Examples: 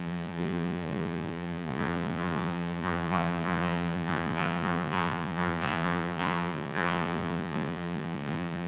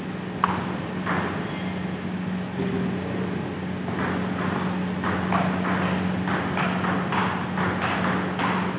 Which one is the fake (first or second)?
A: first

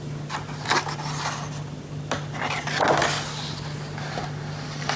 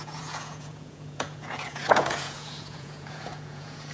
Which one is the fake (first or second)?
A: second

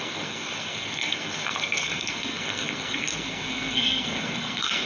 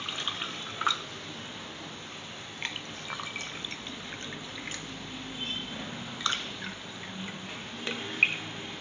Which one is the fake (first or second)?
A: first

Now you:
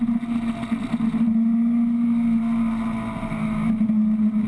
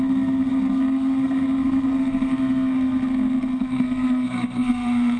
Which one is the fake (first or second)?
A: second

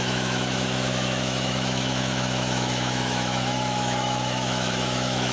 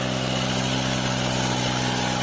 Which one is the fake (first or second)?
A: first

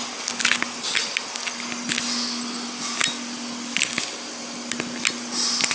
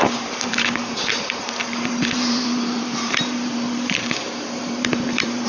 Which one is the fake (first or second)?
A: second